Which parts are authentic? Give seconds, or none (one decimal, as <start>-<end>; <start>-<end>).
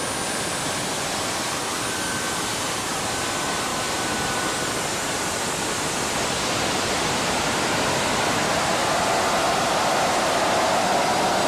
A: 0.0-11.5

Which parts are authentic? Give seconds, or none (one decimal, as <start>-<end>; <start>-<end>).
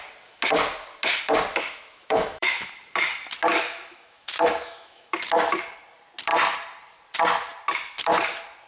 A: 0.0-1.5; 2.7-3.5; 5.2-8.7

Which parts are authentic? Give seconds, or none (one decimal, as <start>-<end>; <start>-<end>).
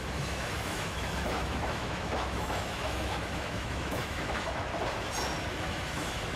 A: 4.7-5.6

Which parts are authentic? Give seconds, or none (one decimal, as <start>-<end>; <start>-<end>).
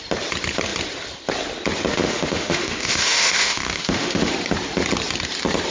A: 0.0-1.9; 4.3-5.7